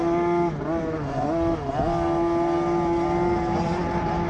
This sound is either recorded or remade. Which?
recorded